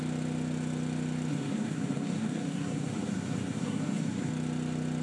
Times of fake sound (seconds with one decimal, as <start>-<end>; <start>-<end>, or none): 1.3-4.3